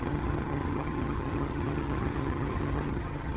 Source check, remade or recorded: remade